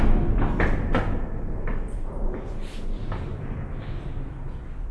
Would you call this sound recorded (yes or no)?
no